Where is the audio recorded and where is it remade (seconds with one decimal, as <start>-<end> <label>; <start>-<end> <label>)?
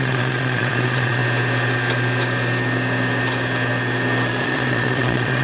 0.0-1.2 remade; 1.2-4.4 recorded; 4.4-5.4 remade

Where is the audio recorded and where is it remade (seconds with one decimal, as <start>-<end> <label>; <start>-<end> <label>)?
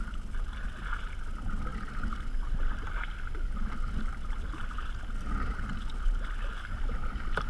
0.0-7.5 recorded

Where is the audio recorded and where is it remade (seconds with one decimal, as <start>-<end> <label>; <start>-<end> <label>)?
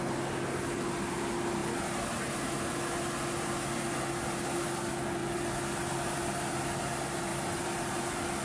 0.0-8.4 recorded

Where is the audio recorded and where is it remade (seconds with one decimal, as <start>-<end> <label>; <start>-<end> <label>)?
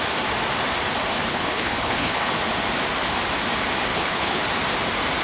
0.0-1.3 recorded; 1.3-2.3 remade; 2.3-3.9 recorded; 3.9-4.4 remade; 4.4-5.2 recorded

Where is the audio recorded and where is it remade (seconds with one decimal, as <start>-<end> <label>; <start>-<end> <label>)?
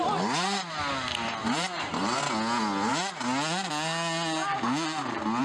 0.0-1.4 recorded; 1.4-2.2 remade; 2.2-5.4 recorded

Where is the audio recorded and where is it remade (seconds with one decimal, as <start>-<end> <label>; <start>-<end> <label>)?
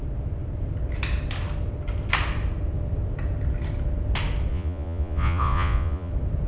0.0-4.5 recorded; 4.5-6.1 remade; 6.1-6.5 recorded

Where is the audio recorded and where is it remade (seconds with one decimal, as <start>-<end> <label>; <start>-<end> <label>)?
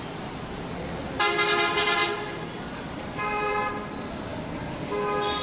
0.0-4.3 recorded; 4.3-4.8 remade; 4.8-5.4 recorded